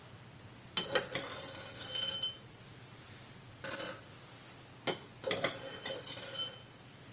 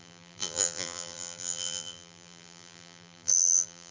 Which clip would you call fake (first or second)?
second